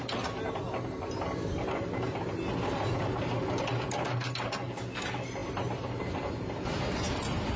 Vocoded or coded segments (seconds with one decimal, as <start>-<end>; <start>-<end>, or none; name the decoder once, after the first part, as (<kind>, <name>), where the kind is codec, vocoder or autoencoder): none